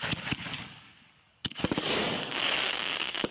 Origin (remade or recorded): remade